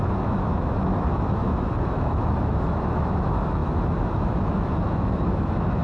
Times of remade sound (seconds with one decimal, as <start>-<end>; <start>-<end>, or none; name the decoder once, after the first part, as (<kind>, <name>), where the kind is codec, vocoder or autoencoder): 0.0-5.8 (autoencoder, DAC-VAE)